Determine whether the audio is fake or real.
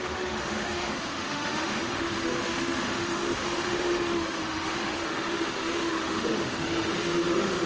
fake